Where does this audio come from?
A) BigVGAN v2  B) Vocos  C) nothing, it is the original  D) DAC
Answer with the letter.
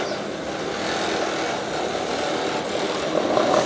C